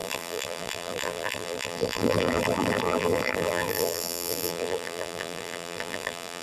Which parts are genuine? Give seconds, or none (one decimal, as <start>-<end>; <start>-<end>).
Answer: none